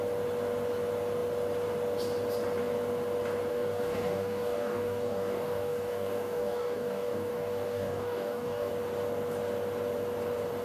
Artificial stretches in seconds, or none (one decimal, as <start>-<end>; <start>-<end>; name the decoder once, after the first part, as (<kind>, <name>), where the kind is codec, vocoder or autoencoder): 3.5-8.7 (codec, DAC)